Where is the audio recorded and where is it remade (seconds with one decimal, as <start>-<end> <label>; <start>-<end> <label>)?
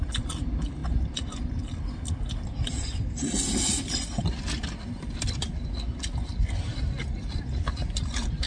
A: 0.0-8.5 recorded